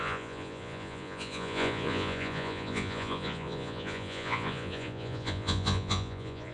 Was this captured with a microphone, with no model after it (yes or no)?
no